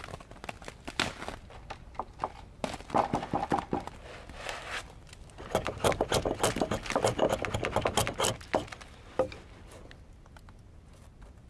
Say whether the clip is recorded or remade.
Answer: recorded